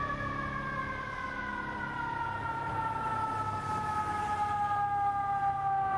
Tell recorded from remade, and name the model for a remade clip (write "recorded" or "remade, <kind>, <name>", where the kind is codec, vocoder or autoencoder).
recorded